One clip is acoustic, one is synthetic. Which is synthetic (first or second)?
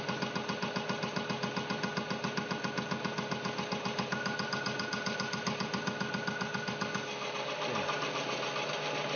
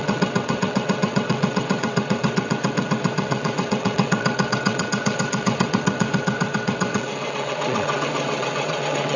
second